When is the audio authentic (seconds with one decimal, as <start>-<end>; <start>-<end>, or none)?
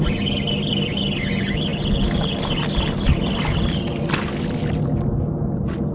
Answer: 0.0-5.9